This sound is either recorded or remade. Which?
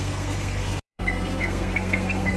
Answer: remade